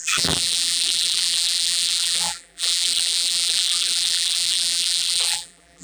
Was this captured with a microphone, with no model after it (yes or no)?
no